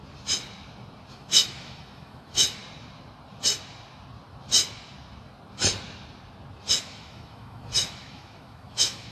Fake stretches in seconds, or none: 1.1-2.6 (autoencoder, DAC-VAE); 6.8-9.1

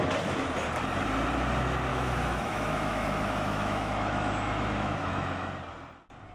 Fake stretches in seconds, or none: 1.9-5.5 (autoencoder, DAC-VAE)

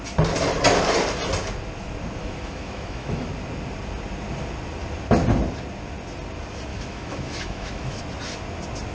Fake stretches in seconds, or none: 2.2-3.3 (autoencoder, DAC-VAE); 6.7-8.0

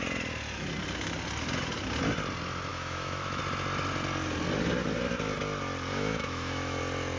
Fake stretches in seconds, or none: 2.7-3.4 (autoencoder, DAC-VAE); 5.9-6.8

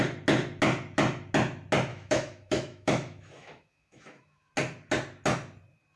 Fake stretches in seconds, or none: 1.9-4.5 (autoencoder, DAC-VAE)